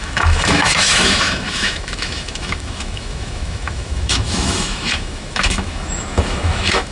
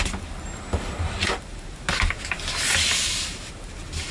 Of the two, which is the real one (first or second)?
second